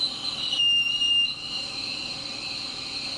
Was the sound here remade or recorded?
recorded